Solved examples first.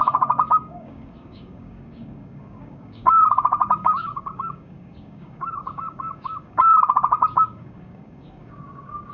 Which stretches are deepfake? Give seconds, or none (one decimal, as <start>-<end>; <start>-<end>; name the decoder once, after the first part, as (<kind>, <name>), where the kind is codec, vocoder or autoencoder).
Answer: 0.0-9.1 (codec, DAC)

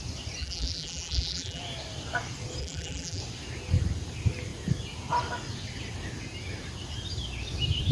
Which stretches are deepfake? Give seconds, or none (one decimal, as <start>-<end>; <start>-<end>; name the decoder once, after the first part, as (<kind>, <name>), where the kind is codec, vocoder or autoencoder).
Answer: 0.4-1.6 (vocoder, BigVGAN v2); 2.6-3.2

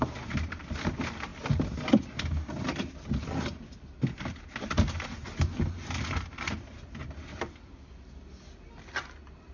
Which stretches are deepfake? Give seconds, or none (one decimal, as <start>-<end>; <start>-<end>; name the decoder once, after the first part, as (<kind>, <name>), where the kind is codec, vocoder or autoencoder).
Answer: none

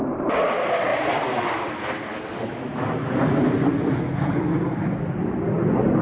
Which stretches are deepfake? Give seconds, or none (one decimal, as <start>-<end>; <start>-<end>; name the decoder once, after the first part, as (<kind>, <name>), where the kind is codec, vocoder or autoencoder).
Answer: none